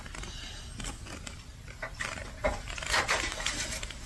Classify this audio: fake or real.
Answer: real